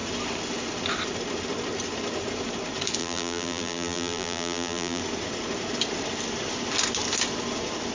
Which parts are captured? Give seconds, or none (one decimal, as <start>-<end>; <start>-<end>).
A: 0.0-3.0; 5.0-7.9